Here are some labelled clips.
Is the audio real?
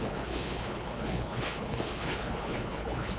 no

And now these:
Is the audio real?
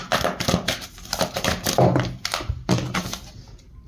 yes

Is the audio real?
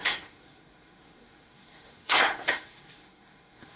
no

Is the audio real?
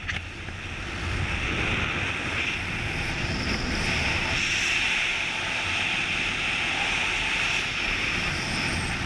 yes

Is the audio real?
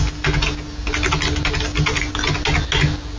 yes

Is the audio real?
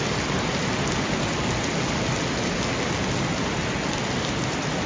yes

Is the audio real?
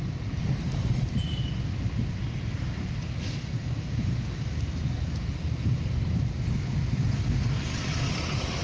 yes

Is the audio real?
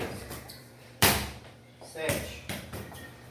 no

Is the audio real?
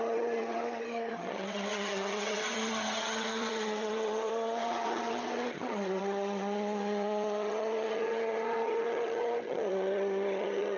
no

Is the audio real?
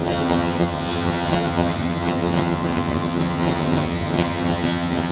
no